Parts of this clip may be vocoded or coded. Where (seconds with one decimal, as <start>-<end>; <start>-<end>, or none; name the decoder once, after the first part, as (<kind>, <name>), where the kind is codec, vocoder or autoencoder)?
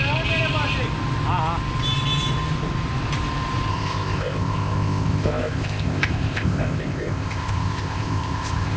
3.7-8.8 (codec, ZipCodec)